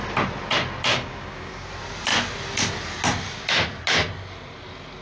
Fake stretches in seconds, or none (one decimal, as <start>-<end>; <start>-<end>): 0.9-1.7